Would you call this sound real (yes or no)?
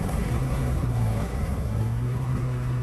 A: no